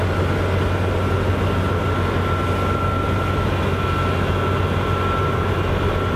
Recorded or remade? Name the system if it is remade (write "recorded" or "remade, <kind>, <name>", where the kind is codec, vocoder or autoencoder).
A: recorded